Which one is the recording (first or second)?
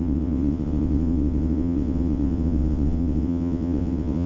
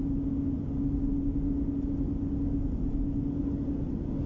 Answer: second